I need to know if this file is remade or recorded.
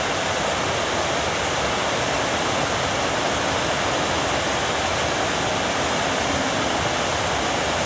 recorded